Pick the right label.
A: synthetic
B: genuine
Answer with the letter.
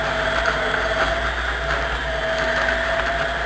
B